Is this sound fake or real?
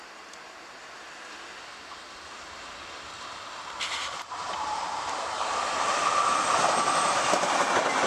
real